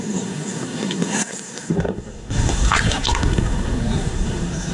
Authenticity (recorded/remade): remade